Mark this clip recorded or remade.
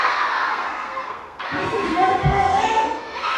remade